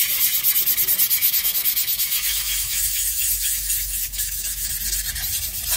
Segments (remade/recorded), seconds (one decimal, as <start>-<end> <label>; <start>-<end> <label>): 0.0-1.2 recorded; 1.2-4.7 remade; 4.7-5.8 recorded